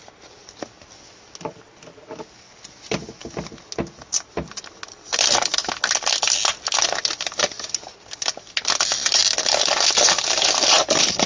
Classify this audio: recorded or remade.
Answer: recorded